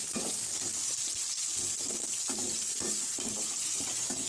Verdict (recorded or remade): remade